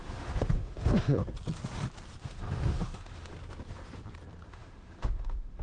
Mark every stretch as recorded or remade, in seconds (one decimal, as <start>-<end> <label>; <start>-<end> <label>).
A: 0.0-1.2 remade; 1.2-2.2 recorded; 2.2-3.3 remade; 3.3-4.5 recorded; 4.5-5.6 remade

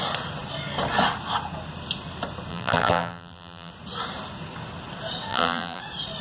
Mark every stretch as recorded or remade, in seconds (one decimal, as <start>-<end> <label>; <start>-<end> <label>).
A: 0.0-2.5 recorded; 2.5-3.7 remade; 3.7-5.3 recorded; 5.3-5.8 remade; 5.8-6.2 recorded